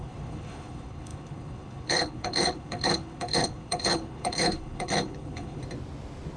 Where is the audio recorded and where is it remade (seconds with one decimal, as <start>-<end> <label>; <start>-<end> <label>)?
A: 0.0-5.6 remade; 5.6-6.4 recorded